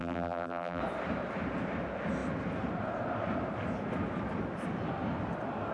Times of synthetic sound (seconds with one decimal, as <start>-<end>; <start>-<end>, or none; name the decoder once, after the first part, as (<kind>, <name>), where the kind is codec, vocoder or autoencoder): 0.0-0.8 (vocoder, BigVGAN v2)